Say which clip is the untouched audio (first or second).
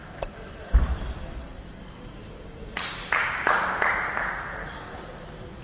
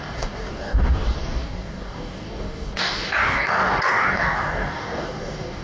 first